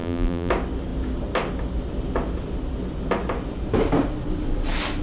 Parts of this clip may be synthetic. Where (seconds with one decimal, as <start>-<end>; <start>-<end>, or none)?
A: 0.0-0.5